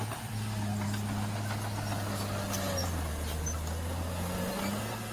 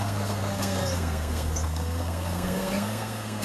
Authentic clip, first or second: first